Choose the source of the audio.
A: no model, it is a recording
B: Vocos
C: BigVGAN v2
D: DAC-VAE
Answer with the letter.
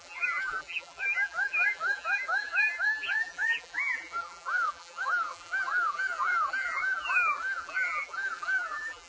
C